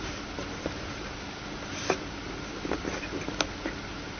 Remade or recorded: recorded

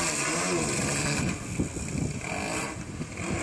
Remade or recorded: recorded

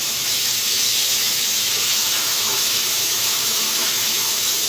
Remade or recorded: remade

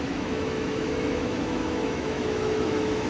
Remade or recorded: remade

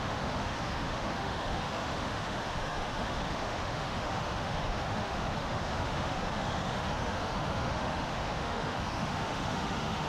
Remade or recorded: remade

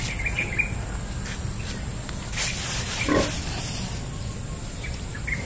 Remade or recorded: recorded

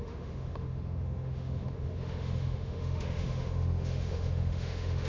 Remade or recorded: remade